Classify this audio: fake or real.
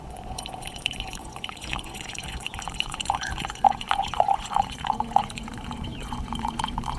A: fake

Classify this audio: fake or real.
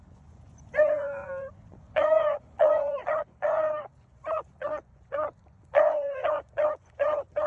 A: fake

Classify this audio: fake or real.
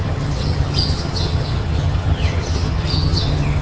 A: fake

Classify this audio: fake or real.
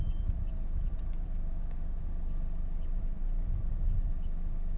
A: fake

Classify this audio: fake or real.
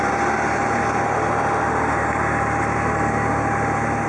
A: real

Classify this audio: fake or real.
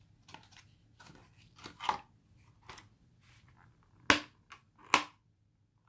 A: real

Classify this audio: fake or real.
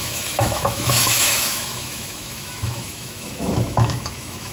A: fake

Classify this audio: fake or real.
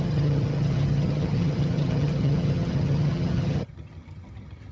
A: fake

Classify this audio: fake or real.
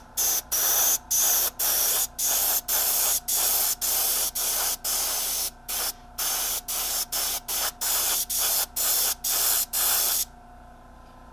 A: real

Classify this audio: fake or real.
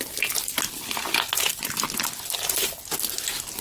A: real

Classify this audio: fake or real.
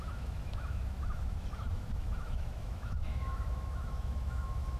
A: fake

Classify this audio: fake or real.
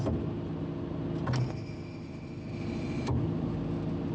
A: real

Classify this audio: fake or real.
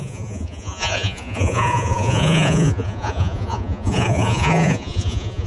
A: fake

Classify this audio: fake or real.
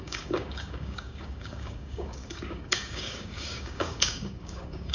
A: fake